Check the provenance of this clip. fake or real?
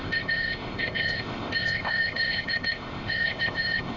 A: fake